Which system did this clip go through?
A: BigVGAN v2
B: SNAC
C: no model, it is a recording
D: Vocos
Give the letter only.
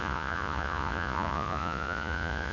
D